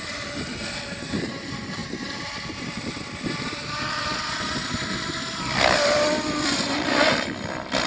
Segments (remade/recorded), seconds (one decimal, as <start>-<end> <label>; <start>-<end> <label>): 0.0-1.8 remade; 1.8-2.7 recorded; 2.7-7.9 remade